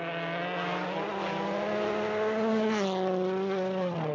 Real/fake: real